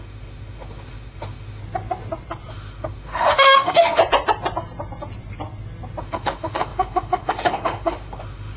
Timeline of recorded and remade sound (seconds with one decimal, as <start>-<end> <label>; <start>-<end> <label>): 0.0-1.6 remade; 1.6-2.5 recorded; 2.5-4.0 remade; 4.0-6.0 recorded; 6.0-8.6 remade